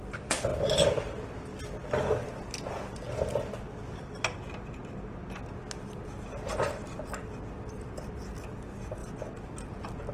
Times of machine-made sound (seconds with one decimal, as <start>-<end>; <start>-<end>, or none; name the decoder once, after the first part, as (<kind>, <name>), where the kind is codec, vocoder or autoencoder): none